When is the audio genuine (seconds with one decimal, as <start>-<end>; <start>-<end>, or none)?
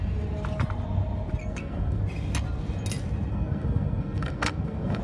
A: 0.0-1.4; 2.0-3.3